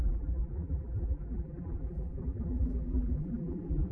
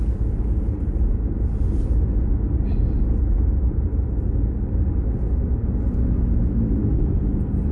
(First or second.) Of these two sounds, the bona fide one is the second